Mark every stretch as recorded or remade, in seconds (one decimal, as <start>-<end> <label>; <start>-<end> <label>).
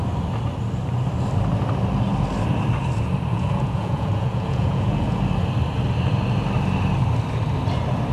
0.0-3.3 recorded; 3.3-5.2 remade; 5.2-8.1 recorded